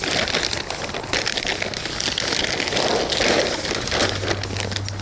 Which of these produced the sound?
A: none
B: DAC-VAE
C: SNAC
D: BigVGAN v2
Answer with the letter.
A